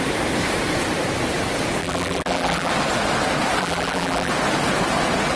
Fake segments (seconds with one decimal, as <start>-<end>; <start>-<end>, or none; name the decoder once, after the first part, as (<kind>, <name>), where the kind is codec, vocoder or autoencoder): 1.8-2.7 (vocoder, BigVGAN v2); 3.6-4.3